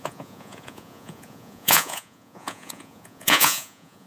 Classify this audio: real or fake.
fake